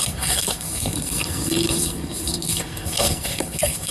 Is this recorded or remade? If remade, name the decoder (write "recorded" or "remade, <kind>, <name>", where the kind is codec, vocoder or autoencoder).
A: remade, codec, SNAC